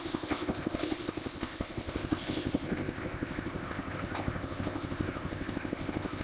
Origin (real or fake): fake